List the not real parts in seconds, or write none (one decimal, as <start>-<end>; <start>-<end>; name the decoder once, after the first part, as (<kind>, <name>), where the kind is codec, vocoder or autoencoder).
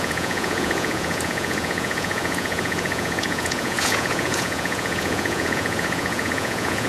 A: 0.0-6.9 (vocoder, Vocos)